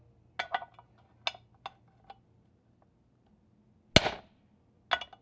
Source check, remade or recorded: recorded